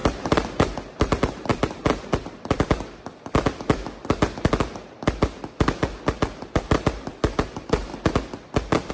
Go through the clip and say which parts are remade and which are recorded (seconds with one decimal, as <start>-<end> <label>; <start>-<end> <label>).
0.0-1.5 remade; 1.5-6.5 recorded; 6.5-7.9 remade; 7.9-8.9 recorded